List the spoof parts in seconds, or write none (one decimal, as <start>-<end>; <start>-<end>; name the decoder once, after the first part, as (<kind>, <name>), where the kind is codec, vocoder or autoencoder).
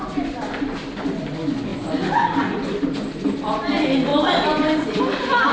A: none